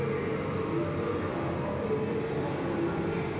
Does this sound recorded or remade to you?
recorded